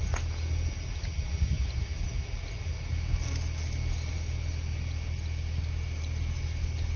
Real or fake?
real